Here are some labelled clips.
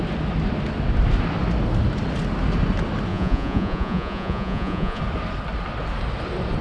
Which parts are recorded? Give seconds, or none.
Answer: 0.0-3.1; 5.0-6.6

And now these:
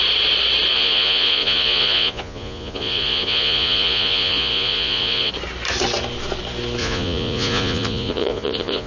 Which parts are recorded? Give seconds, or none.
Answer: 0.0-0.7; 5.3-6.8

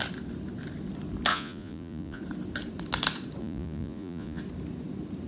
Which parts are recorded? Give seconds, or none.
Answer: 0.0-1.3; 2.2-3.4; 4.4-5.3

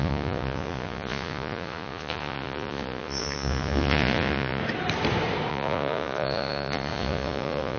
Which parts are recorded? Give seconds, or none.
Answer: 4.6-5.5